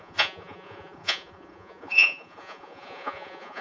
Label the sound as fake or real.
fake